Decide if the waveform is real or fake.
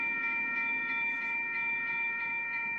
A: fake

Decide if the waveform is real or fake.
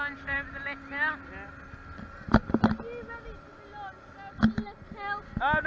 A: real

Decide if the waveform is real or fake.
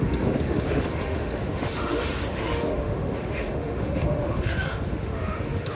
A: fake